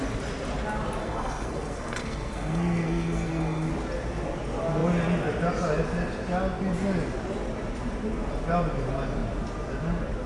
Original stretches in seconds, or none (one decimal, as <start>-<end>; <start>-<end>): 0.0-1.0; 3.7-10.3